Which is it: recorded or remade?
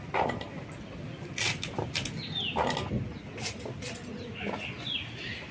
recorded